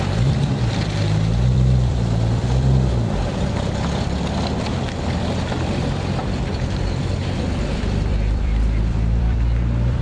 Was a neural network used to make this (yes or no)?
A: yes